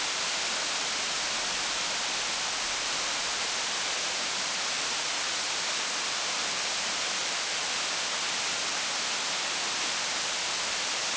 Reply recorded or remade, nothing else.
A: recorded